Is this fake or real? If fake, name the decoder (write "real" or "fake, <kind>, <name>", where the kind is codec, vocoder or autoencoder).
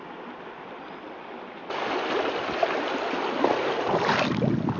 real